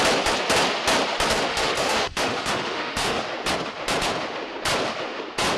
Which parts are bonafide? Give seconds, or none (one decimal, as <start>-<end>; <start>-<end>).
0.0-1.5; 3.2-5.6